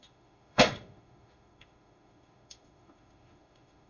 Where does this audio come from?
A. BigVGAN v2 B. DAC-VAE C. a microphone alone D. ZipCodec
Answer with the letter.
B